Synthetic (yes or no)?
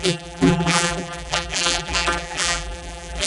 yes